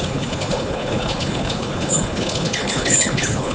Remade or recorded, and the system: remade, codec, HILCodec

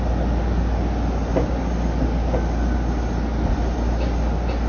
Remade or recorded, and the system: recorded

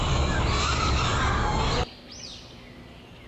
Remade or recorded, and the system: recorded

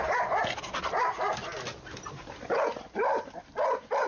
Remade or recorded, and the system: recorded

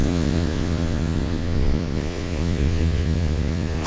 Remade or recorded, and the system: remade, vocoder, Vocos